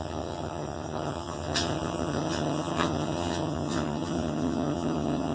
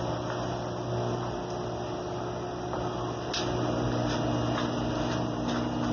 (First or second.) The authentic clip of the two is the second